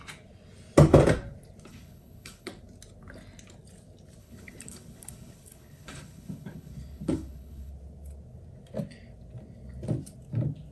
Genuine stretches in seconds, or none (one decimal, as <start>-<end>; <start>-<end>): 0.0-1.7; 2.5-4.2; 7.7-10.7